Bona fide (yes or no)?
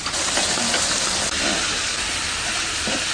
yes